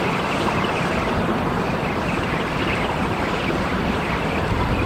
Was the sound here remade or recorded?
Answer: remade